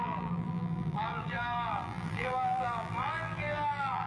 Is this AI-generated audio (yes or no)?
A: yes